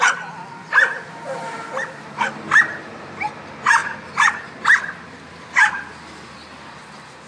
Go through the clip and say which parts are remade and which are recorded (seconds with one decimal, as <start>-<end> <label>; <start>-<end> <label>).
0.0-7.3 recorded